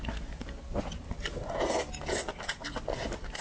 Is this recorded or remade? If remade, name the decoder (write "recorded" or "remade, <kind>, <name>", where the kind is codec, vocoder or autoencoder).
recorded